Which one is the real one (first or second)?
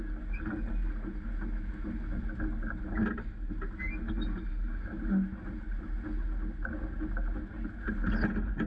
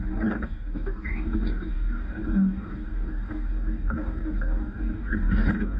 first